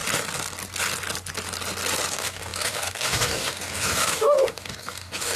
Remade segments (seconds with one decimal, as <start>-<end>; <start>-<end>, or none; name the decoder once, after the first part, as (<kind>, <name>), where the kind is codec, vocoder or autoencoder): 2.1-5.4 (codec, DAC)